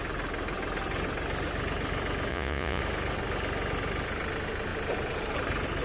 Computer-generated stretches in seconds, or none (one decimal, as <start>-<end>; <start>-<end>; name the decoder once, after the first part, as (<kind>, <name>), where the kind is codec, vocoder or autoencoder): 2.3-2.8 (vocoder, Vocos)

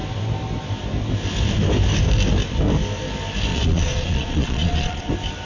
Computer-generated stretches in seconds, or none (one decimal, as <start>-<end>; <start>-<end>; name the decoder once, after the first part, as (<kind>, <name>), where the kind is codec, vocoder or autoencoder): 3.5-5.1 (vocoder, Vocos)

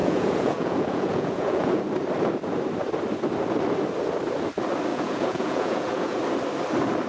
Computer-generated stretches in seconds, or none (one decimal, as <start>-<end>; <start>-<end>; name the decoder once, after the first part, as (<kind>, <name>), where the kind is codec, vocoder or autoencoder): 0.0-1.8 (vocoder, Vocos); 4.9-6.2

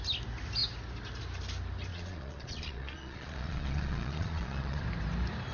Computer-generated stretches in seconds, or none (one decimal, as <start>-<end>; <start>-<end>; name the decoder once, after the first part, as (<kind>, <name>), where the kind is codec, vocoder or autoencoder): 1.9-4.8 (vocoder, Vocos)

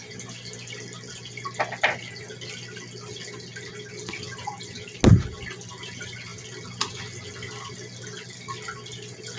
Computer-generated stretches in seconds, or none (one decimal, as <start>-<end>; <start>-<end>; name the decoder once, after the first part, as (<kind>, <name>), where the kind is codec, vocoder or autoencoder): none

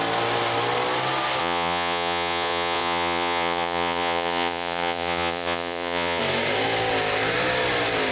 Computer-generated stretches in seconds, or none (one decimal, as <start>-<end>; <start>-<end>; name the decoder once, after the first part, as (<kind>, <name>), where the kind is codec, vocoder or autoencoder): 1.4-6.2 (vocoder, Vocos)

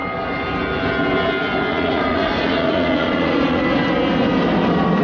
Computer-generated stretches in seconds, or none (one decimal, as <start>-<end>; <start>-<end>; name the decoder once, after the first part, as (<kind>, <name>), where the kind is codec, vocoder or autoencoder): 1.7-3.6 (vocoder, Vocos)

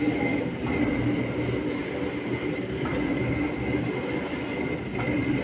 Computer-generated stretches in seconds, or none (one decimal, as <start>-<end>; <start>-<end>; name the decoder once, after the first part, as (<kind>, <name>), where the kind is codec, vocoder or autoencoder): none